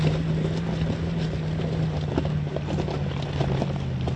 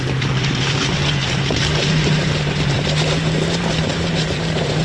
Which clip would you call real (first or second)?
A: first